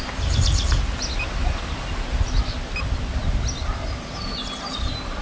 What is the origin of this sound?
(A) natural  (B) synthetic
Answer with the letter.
A